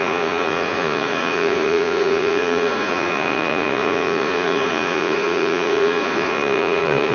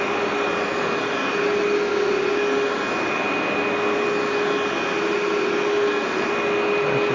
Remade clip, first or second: first